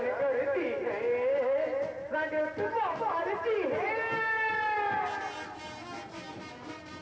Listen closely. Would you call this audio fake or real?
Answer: real